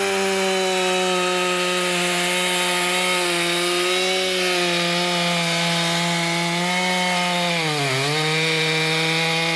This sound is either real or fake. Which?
real